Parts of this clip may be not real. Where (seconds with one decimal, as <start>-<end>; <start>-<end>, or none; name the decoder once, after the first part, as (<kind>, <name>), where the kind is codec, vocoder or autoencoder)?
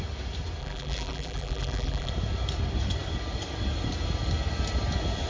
0.6-2.1 (vocoder, BigVGAN v2)